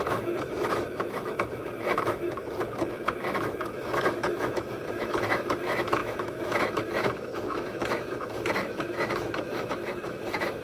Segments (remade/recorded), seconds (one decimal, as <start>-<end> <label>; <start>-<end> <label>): 0.0-10.6 remade